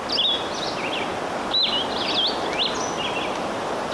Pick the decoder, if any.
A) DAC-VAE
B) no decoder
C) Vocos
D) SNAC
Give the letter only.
B